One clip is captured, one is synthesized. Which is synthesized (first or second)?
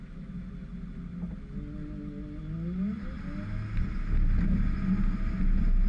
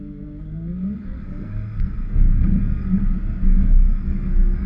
second